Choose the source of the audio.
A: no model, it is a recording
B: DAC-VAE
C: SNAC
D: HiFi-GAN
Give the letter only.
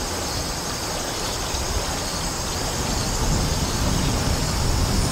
A